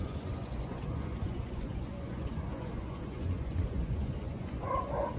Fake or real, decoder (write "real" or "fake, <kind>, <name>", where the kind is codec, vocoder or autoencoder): fake, vocoder, Vocos